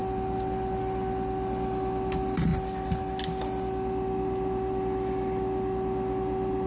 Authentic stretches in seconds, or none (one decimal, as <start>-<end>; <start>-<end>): 0.0-6.7